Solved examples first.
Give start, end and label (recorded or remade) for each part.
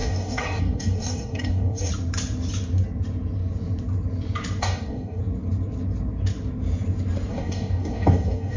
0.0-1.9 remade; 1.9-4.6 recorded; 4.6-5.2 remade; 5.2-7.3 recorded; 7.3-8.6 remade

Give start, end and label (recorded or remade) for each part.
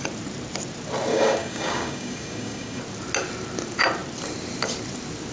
0.0-1.1 recorded; 1.1-2.8 remade; 2.8-5.3 recorded